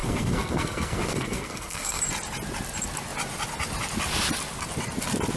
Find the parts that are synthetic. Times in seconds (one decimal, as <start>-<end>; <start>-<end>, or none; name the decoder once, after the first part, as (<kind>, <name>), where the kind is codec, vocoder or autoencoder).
0.0-2.0 (codec, SNAC)